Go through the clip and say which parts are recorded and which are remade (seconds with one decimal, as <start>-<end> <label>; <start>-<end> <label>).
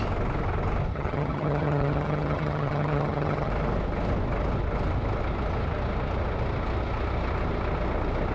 0.0-0.9 recorded; 0.9-3.5 remade; 3.5-8.3 recorded